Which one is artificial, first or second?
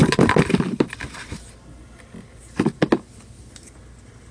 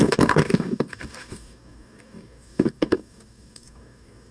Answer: second